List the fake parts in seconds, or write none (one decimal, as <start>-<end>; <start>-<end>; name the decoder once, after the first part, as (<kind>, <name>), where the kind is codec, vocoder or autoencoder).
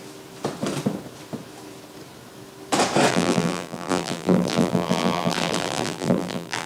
3.1-6.7 (vocoder, BigVGAN v2)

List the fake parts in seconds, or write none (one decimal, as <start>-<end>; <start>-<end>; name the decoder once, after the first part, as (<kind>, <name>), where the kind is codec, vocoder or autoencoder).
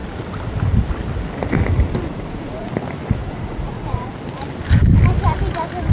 2.1-2.7 (vocoder, Vocos); 3.2-4.1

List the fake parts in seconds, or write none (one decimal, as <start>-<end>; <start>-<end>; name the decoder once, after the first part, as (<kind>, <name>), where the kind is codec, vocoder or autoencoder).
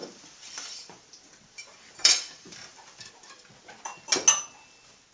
0.0-3.1 (vocoder, BigVGAN v2)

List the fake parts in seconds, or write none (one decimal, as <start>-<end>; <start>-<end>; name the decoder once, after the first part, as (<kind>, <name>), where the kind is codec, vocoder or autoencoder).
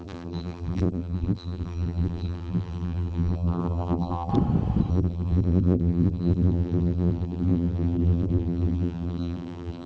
0.0-4.3 (vocoder, BigVGAN v2); 4.9-9.9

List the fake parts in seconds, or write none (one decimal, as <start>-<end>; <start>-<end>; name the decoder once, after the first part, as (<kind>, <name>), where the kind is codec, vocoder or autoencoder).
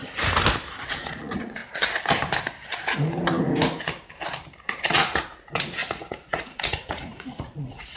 0.8-1.6 (vocoder, Vocos); 4.6-8.0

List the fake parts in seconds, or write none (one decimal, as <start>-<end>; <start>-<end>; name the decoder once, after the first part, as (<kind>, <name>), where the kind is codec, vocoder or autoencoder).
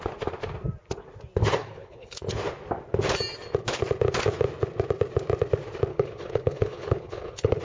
1.6-2.3 (codec, HILCodec); 5.9-7.6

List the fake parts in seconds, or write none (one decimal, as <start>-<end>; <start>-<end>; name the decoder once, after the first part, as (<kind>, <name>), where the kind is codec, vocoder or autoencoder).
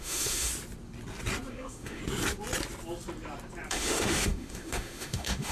0.0-0.5 (autoencoder, DAC-VAE); 1.5-2.0; 3.7-5.5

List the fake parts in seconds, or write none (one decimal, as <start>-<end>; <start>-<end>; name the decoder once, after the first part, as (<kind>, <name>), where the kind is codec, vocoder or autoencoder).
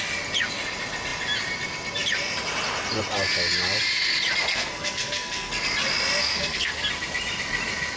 4.5-5.5 (codec, SNAC); 6.2-6.9